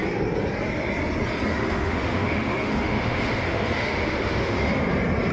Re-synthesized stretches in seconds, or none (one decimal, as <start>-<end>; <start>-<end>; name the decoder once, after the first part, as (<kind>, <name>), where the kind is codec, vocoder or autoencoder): 1.5-4.7 (autoencoder, DAC-VAE)